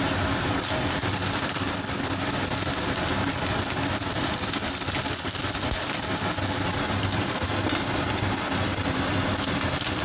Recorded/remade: recorded